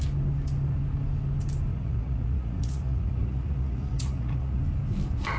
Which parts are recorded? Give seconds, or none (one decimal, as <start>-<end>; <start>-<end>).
0.0-1.7; 4.6-5.4